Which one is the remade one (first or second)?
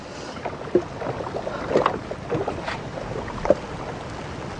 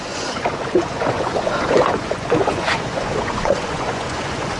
second